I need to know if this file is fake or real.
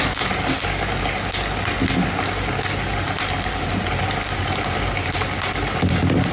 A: real